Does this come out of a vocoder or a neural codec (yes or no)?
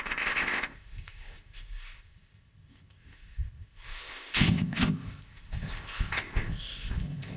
yes